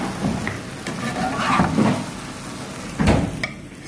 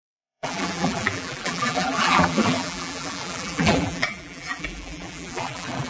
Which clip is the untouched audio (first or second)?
first